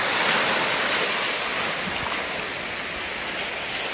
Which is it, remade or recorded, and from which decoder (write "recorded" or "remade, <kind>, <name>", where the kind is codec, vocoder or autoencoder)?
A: recorded